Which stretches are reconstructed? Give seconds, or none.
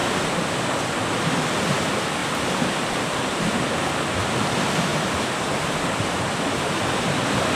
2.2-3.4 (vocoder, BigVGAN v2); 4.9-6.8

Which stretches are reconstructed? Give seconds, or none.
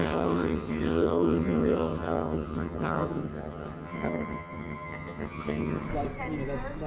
0.0-5.9 (vocoder, HiFi-GAN)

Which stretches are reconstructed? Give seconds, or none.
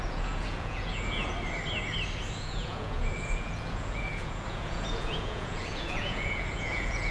0.0-1.3 (vocoder, Vocos); 2.3-7.1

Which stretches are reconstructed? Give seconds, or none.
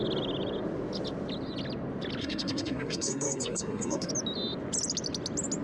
2.2-4.1 (codec, SNAC)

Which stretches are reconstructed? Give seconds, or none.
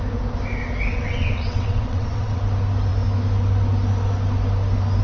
0.9-2.4 (vocoder, WaveNeXt)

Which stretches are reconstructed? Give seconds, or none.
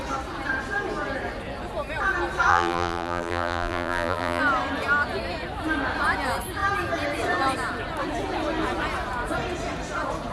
2.5-4.4 (vocoder, BigVGAN v2)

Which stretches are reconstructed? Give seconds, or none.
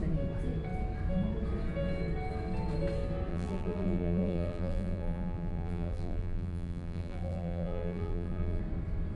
3.3-8.6 (vocoder, BigVGAN v2)